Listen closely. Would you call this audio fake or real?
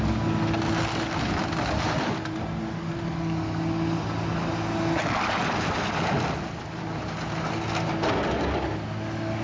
real